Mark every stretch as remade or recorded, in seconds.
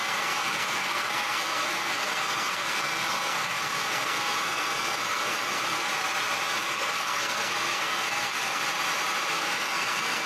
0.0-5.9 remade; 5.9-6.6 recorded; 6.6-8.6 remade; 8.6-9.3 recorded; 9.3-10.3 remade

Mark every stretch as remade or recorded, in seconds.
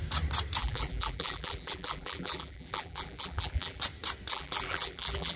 0.0-0.6 recorded; 0.6-3.8 remade; 3.8-4.3 recorded; 4.3-5.4 remade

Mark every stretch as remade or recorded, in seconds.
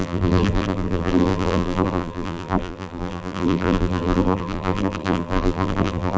0.0-6.2 remade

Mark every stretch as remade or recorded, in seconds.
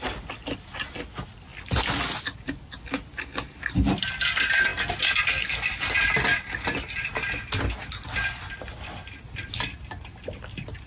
0.0-10.9 recorded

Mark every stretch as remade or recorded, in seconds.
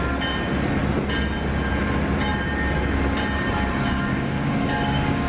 0.0-4.1 recorded; 4.1-5.3 remade